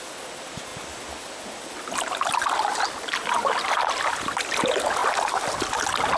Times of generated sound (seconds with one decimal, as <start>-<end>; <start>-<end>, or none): none